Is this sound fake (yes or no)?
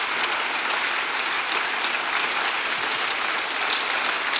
no